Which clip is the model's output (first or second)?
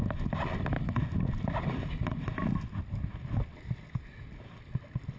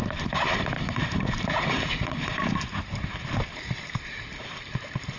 second